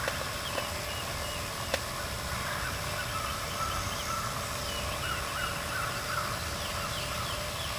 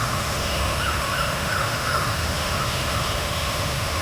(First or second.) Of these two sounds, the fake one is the second